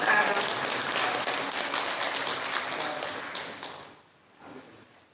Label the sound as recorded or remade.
recorded